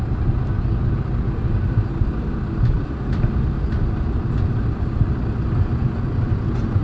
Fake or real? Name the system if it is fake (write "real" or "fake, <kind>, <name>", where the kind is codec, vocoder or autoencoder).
real